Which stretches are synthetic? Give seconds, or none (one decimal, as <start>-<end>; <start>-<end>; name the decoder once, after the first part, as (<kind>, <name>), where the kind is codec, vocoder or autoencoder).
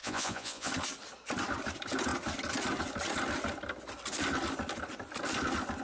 0.0-0.7 (vocoder, Vocos)